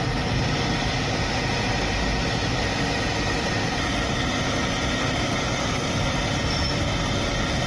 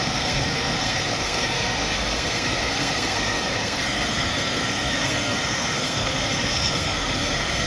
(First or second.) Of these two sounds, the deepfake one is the second